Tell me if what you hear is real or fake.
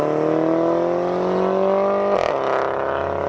real